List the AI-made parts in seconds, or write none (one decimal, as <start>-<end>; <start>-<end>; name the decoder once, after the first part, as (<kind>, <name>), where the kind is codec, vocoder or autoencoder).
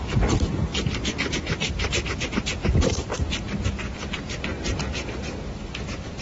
0.0-0.7 (vocoder, BigVGAN v2); 1.3-6.2